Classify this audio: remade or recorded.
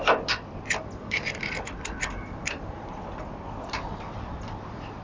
remade